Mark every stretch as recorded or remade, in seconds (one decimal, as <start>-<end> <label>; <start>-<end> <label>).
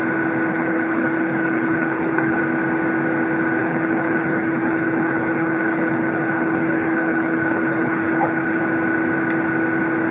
0.0-0.5 recorded; 0.5-2.4 remade; 2.4-3.6 recorded; 3.6-8.6 remade; 8.6-10.1 recorded